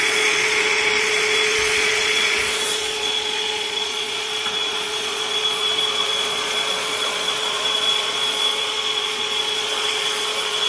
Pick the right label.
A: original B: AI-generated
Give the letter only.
B